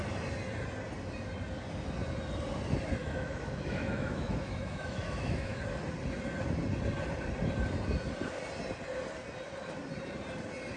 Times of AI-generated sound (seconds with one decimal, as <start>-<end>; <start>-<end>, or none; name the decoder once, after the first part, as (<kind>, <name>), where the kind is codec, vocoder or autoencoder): 3.0-5.6 (autoencoder, DAC-VAE)